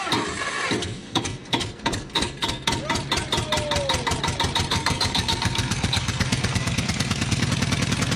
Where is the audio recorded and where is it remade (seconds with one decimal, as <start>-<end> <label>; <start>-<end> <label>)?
0.0-0.8 recorded; 0.8-2.7 remade; 2.7-4.7 recorded; 4.7-7.5 remade; 7.5-8.2 recorded